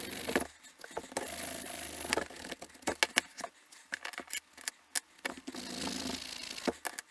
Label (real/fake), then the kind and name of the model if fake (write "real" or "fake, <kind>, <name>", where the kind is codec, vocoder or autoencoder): real